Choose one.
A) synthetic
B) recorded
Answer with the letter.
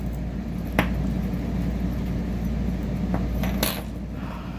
B